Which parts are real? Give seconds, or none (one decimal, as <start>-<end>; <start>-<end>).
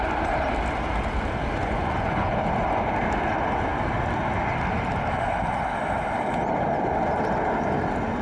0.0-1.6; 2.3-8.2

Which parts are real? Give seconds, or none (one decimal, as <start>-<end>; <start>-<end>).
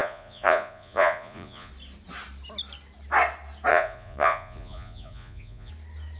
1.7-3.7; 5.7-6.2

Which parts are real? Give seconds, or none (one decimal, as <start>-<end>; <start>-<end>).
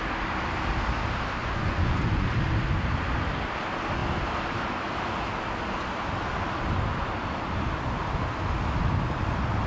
0.0-1.4; 2.3-9.7